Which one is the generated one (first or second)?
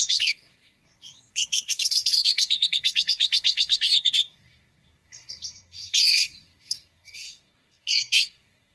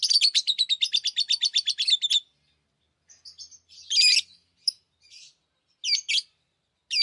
first